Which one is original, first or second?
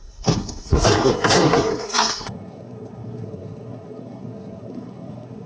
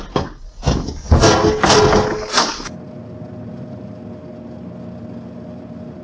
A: second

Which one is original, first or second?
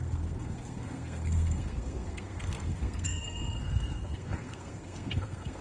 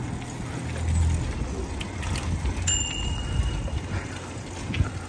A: second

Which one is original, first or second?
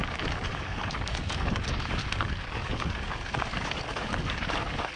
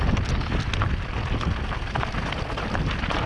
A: second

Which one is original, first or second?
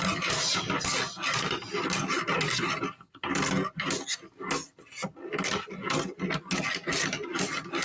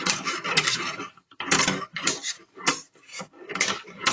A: first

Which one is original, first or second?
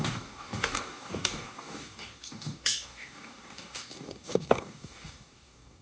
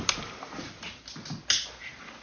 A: second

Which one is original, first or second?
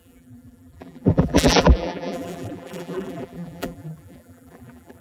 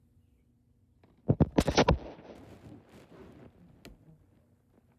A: second